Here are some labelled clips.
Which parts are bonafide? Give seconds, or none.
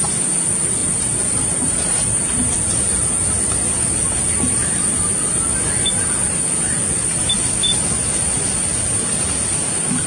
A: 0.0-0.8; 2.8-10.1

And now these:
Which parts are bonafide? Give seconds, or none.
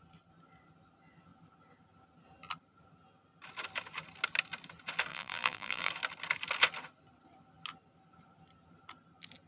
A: 0.0-5.1; 5.9-9.5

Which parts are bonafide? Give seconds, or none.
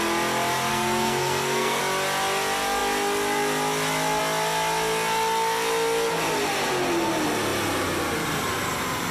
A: 0.0-0.7; 1.8-9.1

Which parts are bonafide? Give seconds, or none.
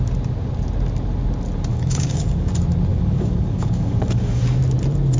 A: 0.0-1.7; 2.5-2.9; 4.6-5.2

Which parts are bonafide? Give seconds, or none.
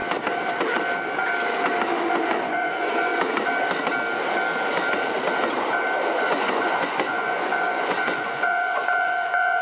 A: 0.0-2.4; 3.1-6.2